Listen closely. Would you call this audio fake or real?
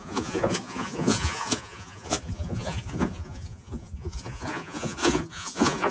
fake